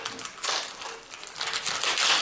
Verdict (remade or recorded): recorded